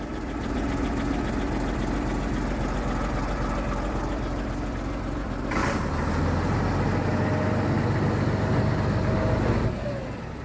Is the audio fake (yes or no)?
no